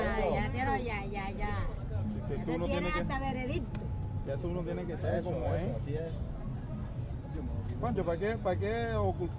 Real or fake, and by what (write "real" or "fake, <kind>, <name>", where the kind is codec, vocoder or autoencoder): real